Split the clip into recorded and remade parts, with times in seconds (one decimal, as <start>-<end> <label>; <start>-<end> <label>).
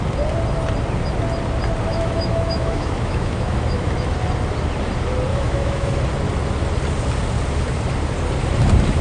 0.0-1.9 recorded; 1.9-3.9 remade; 3.9-5.3 recorded; 5.3-5.9 remade; 5.9-9.0 recorded